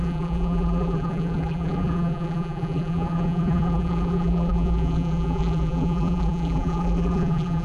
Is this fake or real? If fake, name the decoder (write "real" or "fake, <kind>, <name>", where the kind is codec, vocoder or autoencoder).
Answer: fake, vocoder, BigVGAN v2